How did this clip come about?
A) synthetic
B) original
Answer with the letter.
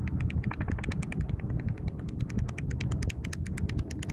B